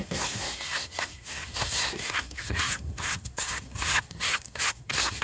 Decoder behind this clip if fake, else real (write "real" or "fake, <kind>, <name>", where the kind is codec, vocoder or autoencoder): fake, codec, SNAC